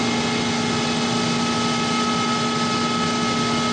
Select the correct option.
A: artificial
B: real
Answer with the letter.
B